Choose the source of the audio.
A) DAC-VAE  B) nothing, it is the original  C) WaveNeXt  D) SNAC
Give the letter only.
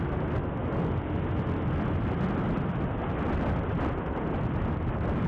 B